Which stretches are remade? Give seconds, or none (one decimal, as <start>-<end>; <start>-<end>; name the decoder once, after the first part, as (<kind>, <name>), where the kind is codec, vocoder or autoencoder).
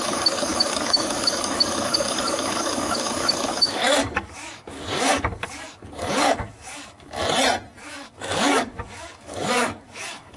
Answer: 0.0-7.2 (codec, DAC); 7.8-10.4